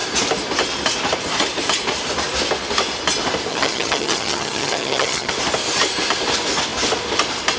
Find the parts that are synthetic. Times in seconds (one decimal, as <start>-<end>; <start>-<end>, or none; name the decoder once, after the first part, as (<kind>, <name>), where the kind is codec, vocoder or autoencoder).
3.5-5.3 (vocoder, HiFi-GAN)